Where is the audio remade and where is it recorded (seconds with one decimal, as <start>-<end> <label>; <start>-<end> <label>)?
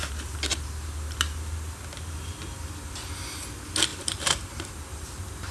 0.0-3.9 recorded; 3.9-5.1 remade; 5.1-5.5 recorded